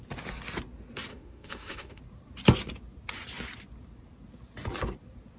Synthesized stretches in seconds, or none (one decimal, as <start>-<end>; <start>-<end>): 1.1-2.0